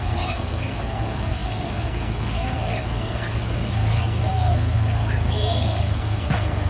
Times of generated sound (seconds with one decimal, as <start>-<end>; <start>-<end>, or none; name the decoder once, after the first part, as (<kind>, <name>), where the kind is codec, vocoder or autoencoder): 0.0-6.7 (codec, SNAC)